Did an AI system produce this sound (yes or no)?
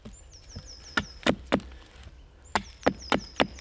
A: no